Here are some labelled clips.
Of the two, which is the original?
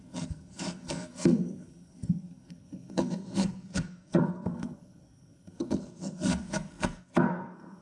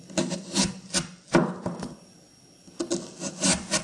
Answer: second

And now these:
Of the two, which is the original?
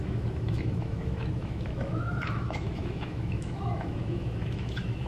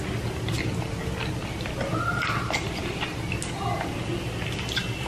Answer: second